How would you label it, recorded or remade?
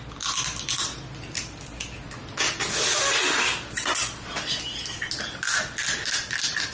recorded